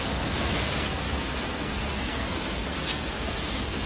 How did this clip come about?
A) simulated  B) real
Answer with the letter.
A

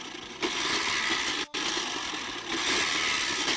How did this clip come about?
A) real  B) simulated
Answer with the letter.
A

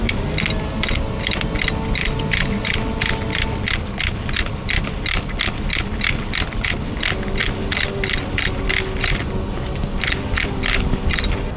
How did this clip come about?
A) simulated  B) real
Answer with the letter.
B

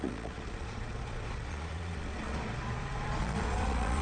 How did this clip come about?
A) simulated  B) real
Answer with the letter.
A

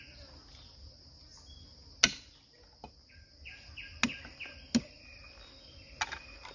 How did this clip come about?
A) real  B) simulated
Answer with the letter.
A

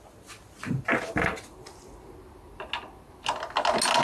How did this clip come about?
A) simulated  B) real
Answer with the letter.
B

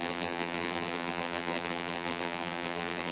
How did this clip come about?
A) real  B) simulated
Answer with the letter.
B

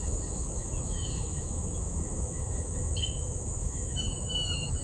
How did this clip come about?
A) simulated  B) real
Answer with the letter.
A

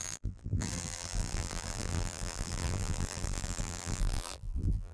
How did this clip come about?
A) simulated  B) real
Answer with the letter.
A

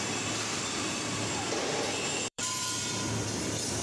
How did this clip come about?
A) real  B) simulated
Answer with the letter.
B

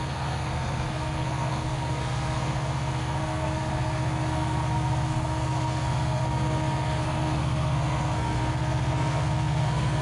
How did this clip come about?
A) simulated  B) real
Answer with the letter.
A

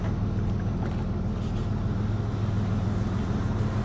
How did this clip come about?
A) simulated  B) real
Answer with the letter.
B